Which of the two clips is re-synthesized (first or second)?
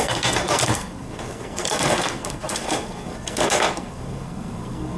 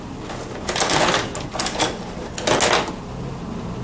first